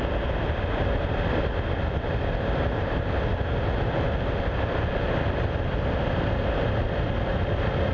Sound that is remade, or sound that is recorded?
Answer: recorded